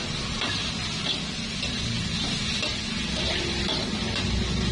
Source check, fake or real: real